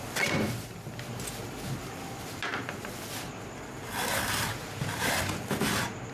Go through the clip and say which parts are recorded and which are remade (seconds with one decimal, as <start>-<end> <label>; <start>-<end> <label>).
0.0-1.8 recorded; 1.8-5.5 remade; 5.5-6.1 recorded